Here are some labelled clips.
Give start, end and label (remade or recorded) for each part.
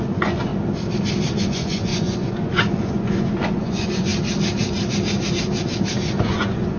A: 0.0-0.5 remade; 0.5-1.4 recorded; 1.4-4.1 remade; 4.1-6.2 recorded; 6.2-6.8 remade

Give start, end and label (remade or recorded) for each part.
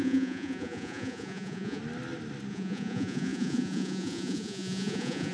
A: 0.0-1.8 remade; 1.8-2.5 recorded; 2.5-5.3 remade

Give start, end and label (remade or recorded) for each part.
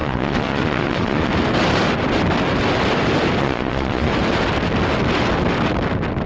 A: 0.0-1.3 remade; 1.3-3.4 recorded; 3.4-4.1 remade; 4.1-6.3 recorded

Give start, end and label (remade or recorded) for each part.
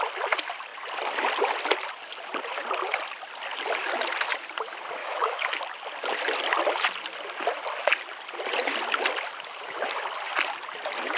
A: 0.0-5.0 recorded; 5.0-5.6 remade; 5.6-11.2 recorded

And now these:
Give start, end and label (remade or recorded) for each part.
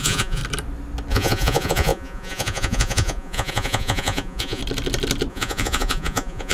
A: 0.0-0.4 remade; 0.4-1.1 recorded; 1.1-4.6 remade; 4.6-5.3 recorded; 5.3-6.5 remade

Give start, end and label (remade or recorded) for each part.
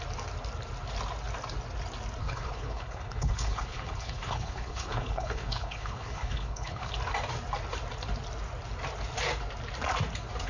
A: 0.0-2.2 recorded; 2.2-6.9 remade; 6.9-10.5 recorded